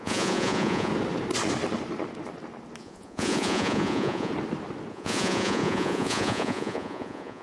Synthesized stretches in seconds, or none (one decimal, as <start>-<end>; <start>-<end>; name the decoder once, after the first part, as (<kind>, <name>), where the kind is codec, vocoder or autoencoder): 0.0-0.9 (vocoder, Vocos); 2.8-4.3; 4.9-7.4